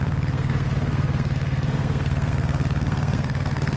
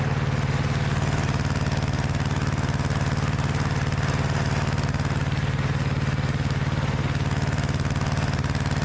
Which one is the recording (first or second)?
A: second